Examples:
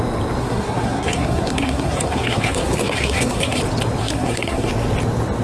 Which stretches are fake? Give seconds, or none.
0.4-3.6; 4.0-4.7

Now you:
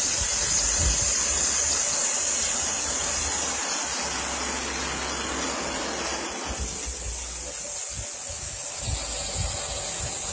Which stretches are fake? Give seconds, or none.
none

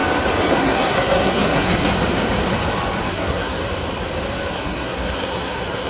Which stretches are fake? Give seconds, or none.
0.5-1.9; 3.0-3.6; 4.5-5.9

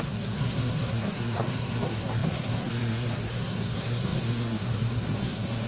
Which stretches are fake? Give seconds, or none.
0.0-5.7

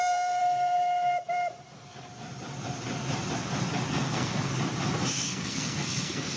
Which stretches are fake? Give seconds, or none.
0.0-0.4; 3.9-4.5; 5.1-6.4